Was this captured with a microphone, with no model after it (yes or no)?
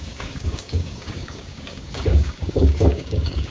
no